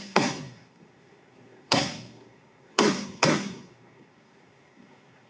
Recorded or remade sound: remade